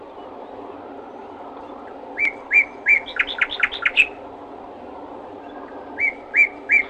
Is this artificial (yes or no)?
no